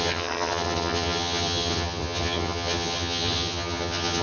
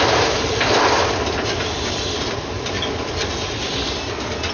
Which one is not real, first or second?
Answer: first